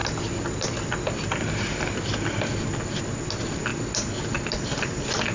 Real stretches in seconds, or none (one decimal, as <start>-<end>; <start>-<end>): 0.0-5.3